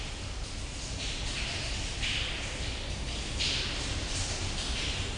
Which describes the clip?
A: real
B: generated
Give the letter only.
A